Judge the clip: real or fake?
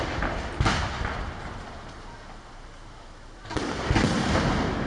fake